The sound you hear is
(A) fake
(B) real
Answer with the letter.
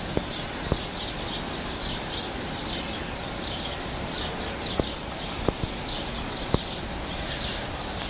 B